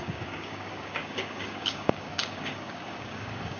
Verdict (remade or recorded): remade